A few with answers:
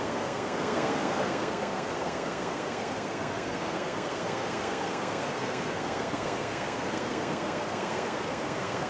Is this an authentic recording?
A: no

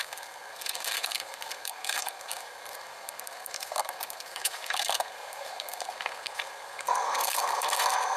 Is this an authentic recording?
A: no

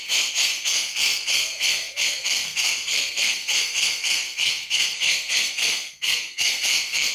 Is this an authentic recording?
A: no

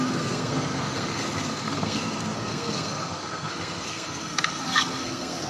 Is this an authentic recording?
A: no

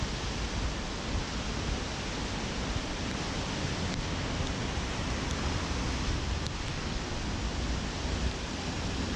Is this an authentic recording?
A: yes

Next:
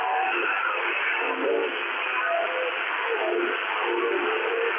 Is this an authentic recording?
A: yes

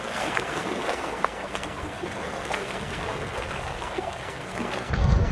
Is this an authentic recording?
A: no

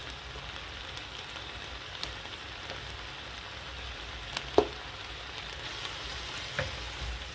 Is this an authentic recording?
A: yes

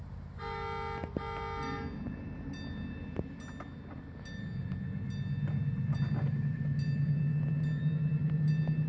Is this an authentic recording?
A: yes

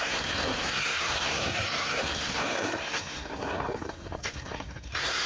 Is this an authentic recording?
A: no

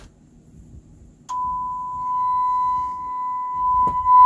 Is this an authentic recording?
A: yes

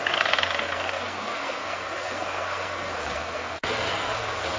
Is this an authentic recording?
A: no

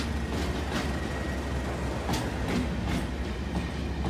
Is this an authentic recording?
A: yes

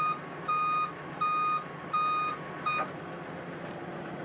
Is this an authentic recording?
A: yes